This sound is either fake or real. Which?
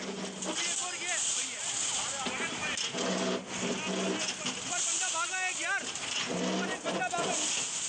real